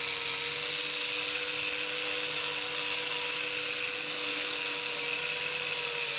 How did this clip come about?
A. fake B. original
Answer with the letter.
B